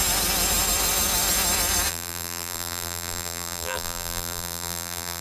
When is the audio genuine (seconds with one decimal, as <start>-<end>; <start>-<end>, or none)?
0.0-1.9